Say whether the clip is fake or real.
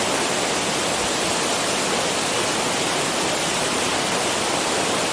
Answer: real